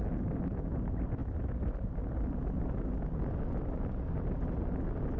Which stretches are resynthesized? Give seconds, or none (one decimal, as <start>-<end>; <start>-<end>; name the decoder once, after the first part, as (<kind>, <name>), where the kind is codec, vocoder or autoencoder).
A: none